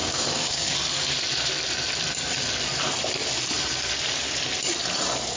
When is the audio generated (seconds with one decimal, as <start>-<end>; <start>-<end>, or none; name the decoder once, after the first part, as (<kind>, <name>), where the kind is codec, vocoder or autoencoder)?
0.0-0.7 (codec, DAC)